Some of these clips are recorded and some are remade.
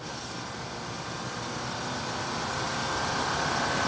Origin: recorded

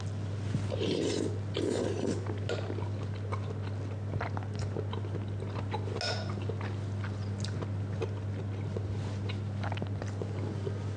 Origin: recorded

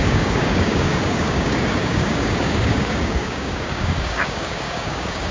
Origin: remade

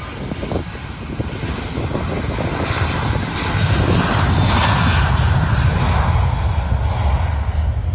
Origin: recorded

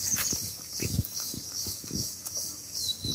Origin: remade